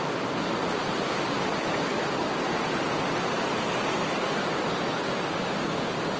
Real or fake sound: fake